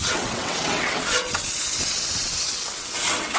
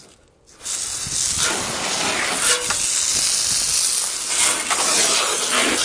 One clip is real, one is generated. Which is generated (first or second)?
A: first